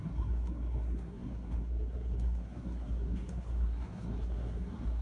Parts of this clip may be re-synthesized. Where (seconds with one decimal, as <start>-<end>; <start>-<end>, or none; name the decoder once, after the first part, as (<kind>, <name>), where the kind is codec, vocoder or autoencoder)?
0.0-5.0 (codec, SNAC)